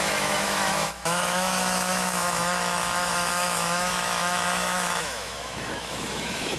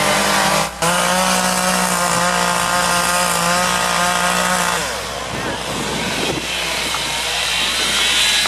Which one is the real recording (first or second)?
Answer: second